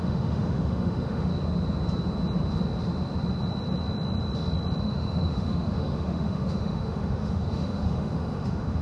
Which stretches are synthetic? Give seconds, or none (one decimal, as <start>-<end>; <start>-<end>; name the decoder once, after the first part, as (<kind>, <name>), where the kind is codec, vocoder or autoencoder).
0.0-1.3 (autoencoder, DAC-VAE); 4.8-8.8